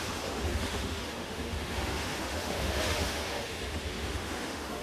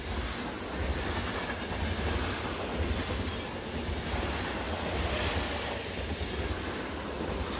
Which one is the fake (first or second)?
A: first